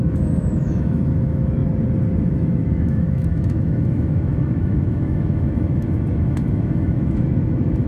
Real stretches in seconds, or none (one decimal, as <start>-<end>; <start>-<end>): 1.6-2.2